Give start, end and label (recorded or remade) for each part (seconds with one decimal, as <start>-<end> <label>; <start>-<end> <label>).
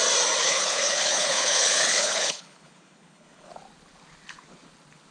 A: 0.0-0.4 recorded; 0.4-3.5 remade; 3.5-5.1 recorded